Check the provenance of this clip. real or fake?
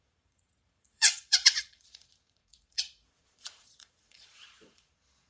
fake